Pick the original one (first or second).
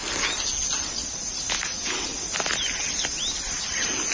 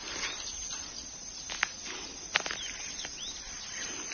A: first